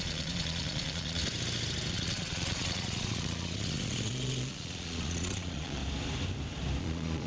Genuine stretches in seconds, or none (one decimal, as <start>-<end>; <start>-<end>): 1.2-1.9; 5.8-6.8